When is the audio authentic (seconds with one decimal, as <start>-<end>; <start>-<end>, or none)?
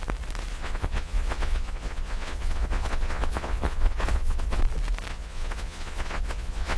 0.0-0.5; 4.6-5.1